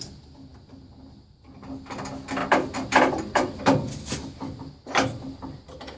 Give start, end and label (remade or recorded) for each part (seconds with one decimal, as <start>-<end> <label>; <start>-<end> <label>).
0.0-2.4 recorded; 2.4-3.6 remade; 3.6-6.0 recorded